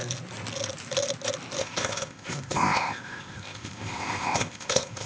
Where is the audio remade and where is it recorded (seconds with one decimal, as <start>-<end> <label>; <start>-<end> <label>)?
0.0-1.6 recorded; 1.6-5.1 remade